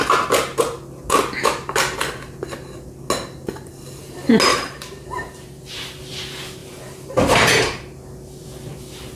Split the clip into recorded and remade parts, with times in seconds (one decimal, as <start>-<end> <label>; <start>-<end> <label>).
0.0-4.5 recorded; 4.5-6.0 remade; 6.0-6.6 recorded; 6.6-8.0 remade; 8.0-9.2 recorded